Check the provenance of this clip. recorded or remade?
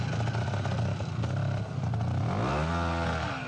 recorded